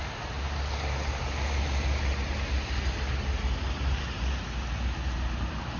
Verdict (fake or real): real